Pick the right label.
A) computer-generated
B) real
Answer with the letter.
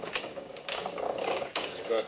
A